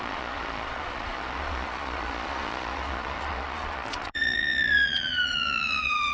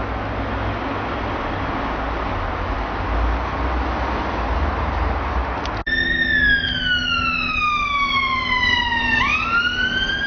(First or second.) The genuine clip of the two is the second